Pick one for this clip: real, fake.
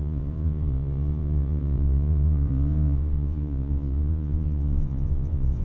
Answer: fake